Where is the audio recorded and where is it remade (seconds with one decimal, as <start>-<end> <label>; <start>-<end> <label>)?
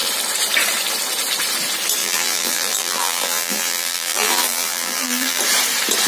0.0-2.0 recorded; 2.0-5.4 remade; 5.4-6.1 recorded